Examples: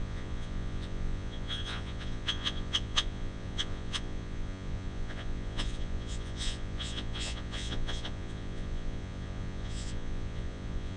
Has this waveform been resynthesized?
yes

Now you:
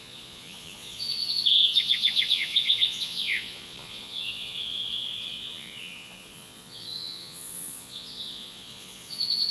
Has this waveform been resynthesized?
yes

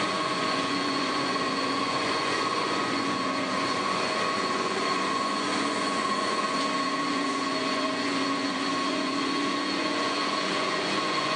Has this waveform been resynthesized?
yes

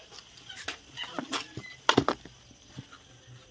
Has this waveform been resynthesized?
no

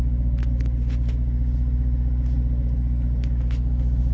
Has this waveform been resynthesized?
no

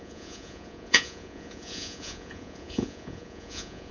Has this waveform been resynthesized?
yes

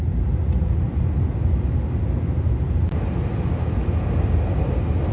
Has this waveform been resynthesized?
no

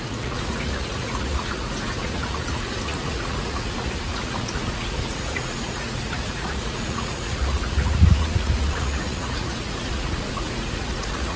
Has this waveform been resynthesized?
yes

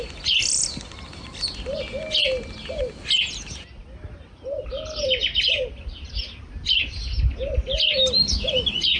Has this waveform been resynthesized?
no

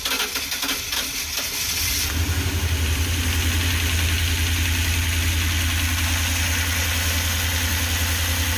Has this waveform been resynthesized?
no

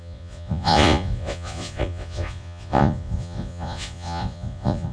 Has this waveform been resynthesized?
yes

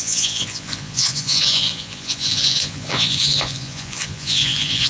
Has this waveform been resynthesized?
yes